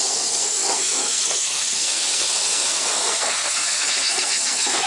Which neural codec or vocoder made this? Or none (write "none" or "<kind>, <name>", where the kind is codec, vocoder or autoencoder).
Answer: codec, SNAC